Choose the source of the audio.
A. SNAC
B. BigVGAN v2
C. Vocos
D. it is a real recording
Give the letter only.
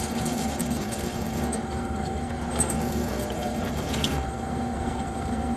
A